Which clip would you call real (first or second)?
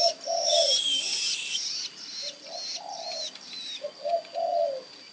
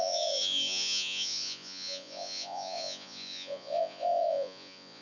first